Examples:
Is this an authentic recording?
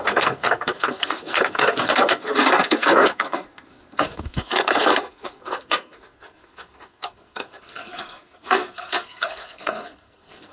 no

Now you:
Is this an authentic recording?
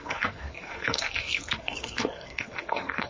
no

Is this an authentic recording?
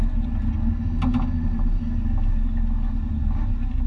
yes